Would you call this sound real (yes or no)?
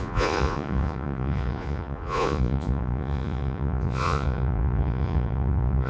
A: no